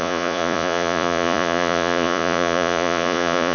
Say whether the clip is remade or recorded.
remade